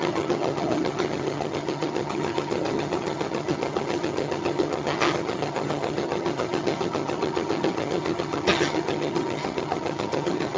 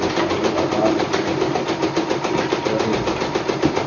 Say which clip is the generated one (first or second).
first